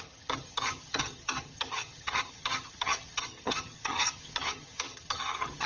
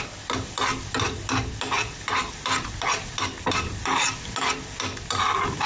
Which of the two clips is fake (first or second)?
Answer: first